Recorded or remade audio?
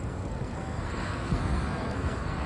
remade